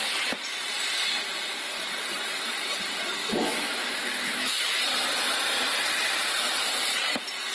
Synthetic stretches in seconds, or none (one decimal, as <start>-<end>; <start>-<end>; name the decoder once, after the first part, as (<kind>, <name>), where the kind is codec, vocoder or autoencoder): 3.2-4.6 (autoencoder, DAC-VAE)